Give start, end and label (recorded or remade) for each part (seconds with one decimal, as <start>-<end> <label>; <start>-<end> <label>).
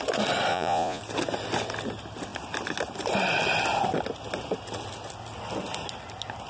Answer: 0.0-0.5 recorded; 0.5-1.0 remade; 1.0-6.5 recorded